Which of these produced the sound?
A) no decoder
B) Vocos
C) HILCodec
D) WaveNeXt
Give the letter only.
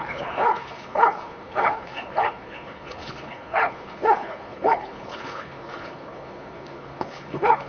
C